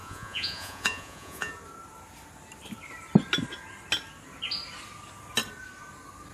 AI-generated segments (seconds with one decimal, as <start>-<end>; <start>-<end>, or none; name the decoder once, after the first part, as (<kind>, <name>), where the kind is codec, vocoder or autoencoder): 0.0-1.5 (vocoder, Vocos)